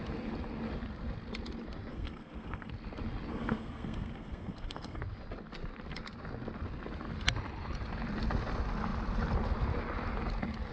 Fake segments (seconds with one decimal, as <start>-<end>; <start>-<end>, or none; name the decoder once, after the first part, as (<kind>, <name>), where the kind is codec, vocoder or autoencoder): 1.9-2.7 (codec, SNAC); 3.3-5.0